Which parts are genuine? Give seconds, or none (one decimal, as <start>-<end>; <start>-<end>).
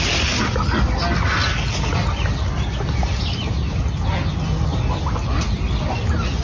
0.0-6.4